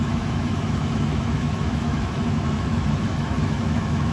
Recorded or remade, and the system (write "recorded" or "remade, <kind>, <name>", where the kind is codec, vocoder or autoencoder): remade, autoencoder, DAC-VAE